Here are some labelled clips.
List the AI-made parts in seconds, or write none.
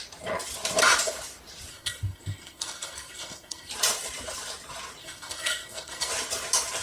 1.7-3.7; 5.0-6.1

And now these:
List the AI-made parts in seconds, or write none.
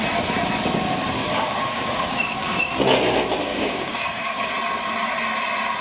1.2-2.7; 3.5-4.5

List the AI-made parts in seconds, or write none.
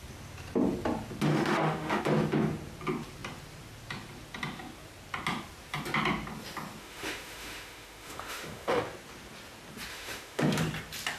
1.3-2.0; 6.8-8.8; 9.9-10.6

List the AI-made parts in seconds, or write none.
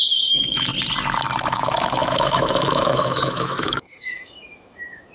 0.0-0.7; 1.5-5.1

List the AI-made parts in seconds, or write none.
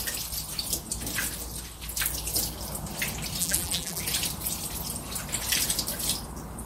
3.4-4.0